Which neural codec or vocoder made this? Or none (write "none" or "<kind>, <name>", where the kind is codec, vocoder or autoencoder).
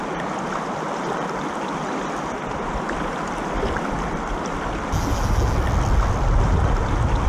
none